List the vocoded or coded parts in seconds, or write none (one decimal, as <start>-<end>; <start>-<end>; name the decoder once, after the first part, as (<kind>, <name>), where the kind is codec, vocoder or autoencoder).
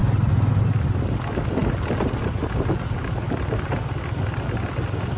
none